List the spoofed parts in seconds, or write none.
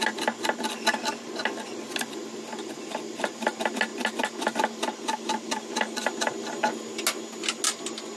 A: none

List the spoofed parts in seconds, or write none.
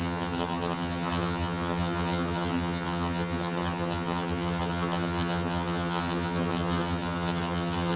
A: 0.0-8.0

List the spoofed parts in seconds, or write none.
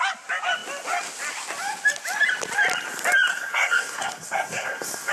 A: 3.3-5.1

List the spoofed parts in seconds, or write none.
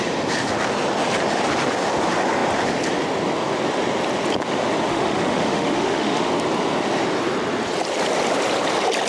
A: 4.9-6.3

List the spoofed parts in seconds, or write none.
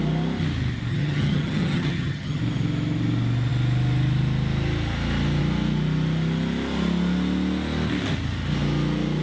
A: 0.9-2.4